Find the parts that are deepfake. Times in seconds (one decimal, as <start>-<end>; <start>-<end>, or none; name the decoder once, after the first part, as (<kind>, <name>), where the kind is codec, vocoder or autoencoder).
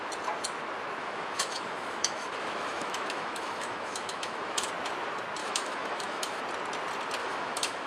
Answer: 1.0-4.7 (autoencoder, DAC-VAE); 5.4-6.4; 7.2-7.9